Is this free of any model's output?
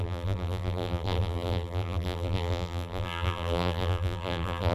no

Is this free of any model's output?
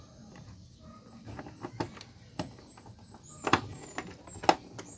yes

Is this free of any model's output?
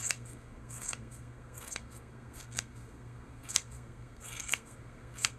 no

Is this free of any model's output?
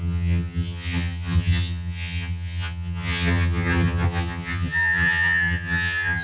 no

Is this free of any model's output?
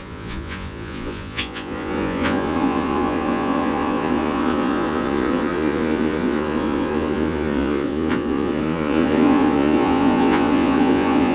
no